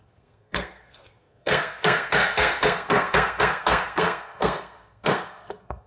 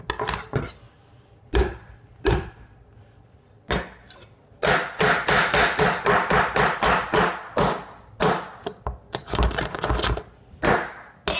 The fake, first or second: first